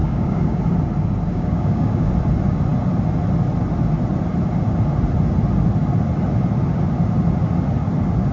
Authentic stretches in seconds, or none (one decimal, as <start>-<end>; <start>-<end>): 0.6-1.3; 2.1-8.3